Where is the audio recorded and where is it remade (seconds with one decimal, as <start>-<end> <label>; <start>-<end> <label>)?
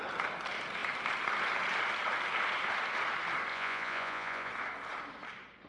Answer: 0.0-3.5 recorded; 3.5-4.5 remade; 4.5-5.7 recorded